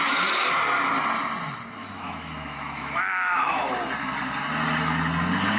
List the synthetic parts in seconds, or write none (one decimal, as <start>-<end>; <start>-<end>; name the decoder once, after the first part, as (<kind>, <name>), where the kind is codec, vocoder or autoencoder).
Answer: 1.8-3.7 (autoencoder, DAC-VAE)